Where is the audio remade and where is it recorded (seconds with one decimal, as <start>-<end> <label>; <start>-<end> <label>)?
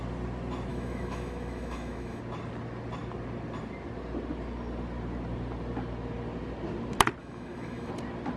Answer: 0.0-0.7 recorded; 0.7-2.2 remade; 2.2-7.2 recorded; 7.2-7.9 remade; 7.9-8.4 recorded